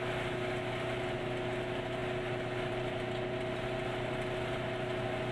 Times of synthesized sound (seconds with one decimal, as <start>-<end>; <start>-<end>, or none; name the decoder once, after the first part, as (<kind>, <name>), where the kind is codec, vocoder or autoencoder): none

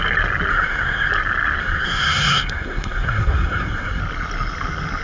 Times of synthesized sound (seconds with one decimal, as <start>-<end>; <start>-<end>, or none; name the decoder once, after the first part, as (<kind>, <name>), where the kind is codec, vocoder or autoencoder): 0.5-1.1 (codec, SNAC); 1.6-4.0

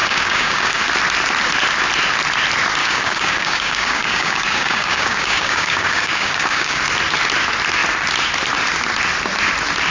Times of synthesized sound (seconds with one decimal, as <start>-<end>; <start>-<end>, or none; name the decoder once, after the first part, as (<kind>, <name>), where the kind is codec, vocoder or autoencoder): 0.0-0.8 (codec, DAC); 2.8-6.8

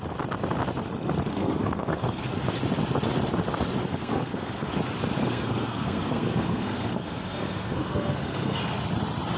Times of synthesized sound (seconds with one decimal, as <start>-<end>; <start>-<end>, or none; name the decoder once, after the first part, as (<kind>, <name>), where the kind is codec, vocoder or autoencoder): 1.3-2.3 (codec, SNAC); 3.8-4.8; 5.2-8.6

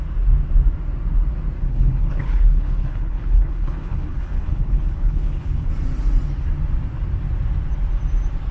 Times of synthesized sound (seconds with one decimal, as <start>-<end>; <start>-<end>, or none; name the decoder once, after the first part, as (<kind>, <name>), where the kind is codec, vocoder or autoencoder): 1.6-5.7 (codec, HILCodec)

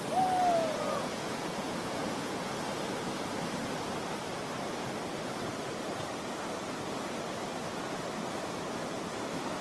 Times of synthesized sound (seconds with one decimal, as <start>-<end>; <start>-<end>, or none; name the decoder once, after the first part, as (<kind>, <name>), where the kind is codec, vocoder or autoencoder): 0.6-2.5 (vocoder, Vocos)